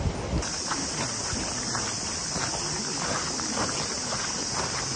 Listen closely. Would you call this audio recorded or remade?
recorded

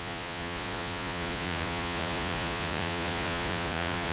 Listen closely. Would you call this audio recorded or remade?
remade